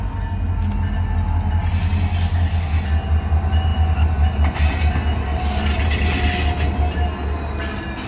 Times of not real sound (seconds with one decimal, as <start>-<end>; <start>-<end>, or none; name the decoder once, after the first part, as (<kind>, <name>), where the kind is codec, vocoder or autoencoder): none